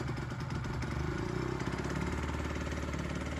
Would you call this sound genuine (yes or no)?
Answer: yes